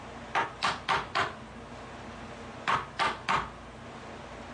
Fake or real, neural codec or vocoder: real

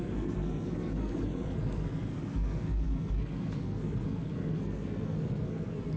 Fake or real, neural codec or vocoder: fake, codec, SNAC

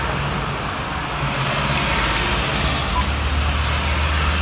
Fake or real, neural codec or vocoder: real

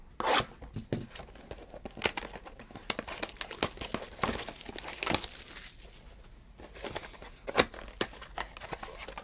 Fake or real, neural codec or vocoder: real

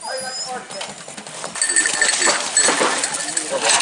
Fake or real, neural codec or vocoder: real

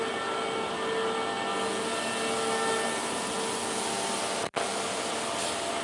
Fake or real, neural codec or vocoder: real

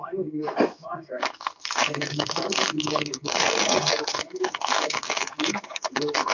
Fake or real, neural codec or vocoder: fake, codec, SNAC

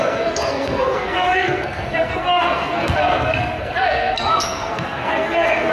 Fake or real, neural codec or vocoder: fake, codec, SNAC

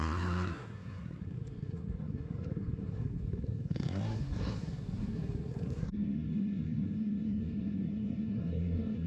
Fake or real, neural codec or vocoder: fake, codec, SNAC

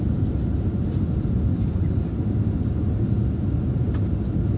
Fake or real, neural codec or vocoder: real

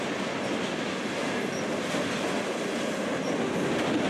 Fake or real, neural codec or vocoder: real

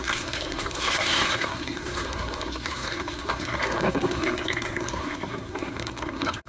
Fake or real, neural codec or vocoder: fake, codec, SNAC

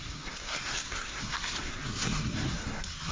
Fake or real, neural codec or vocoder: fake, codec, SNAC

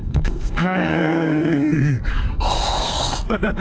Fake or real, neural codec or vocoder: fake, codec, SNAC